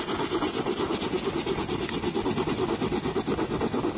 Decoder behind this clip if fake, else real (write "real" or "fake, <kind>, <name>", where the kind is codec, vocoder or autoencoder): real